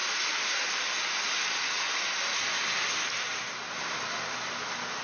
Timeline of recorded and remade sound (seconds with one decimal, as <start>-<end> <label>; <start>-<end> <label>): 0.0-5.0 recorded